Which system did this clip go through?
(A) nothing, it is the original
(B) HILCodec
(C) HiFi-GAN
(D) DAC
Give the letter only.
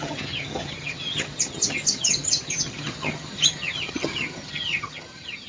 C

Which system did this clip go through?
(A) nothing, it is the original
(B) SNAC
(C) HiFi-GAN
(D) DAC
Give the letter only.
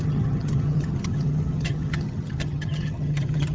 C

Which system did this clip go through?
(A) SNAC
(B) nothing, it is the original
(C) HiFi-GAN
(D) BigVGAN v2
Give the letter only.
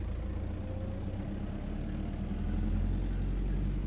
B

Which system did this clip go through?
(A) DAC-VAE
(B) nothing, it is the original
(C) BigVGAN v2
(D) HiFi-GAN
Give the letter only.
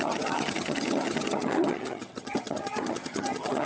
D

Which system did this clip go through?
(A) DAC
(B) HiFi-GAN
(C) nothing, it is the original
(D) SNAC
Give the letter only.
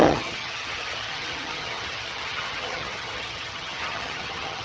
B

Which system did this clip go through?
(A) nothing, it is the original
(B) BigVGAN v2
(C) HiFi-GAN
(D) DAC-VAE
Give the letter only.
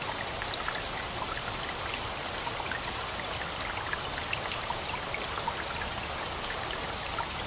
A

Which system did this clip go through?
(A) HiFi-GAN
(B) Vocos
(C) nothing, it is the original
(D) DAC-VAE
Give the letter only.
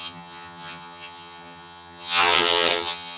A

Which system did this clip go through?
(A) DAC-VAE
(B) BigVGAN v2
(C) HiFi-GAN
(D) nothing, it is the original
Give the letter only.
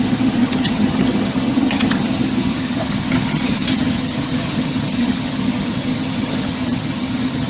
C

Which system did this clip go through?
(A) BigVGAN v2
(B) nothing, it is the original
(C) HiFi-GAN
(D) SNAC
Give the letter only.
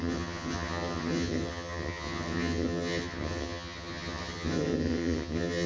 C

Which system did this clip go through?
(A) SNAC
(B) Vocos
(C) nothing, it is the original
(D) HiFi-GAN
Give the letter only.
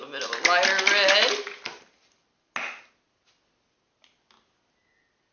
C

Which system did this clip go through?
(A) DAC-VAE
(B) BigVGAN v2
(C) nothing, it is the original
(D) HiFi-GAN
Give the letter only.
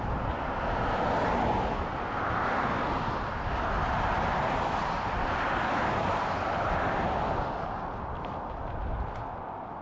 C